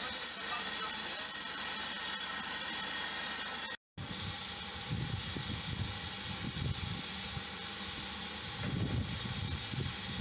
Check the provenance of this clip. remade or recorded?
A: recorded